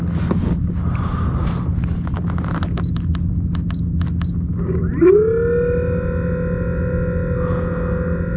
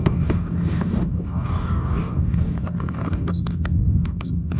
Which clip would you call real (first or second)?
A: first